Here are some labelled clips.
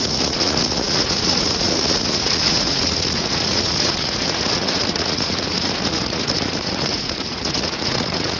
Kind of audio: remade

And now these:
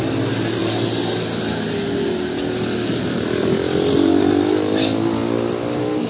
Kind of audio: recorded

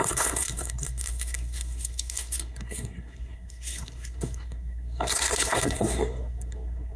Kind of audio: remade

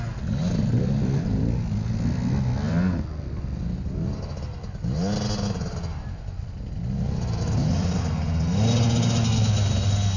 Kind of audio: recorded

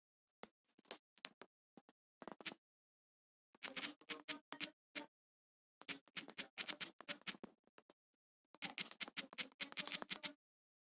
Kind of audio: recorded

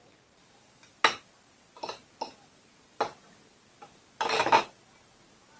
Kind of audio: recorded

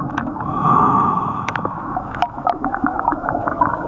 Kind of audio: remade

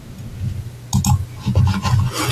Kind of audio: recorded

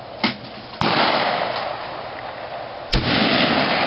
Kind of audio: recorded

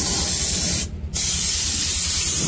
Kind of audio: recorded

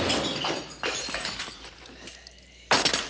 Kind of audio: recorded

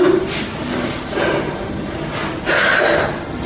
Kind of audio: recorded